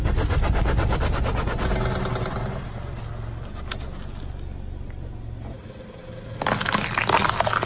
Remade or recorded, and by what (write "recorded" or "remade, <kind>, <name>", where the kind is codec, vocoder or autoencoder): recorded